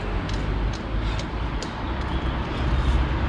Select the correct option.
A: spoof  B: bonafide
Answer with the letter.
B